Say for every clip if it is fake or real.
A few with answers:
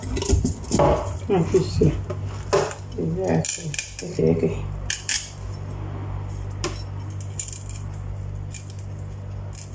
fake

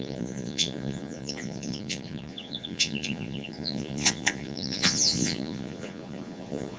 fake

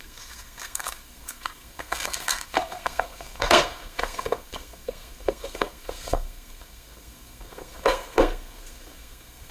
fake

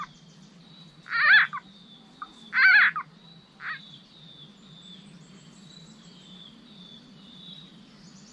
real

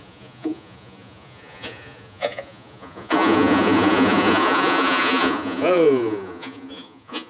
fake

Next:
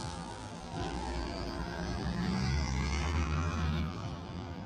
fake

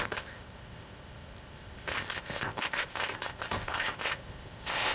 fake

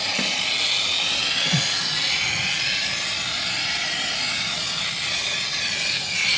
real